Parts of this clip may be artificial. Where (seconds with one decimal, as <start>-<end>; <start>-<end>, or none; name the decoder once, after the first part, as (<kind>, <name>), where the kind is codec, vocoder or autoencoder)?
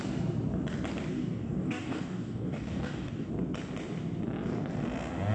1.1-3.3 (codec, DAC)